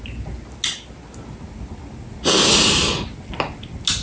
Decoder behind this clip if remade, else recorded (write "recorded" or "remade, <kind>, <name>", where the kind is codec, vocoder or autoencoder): recorded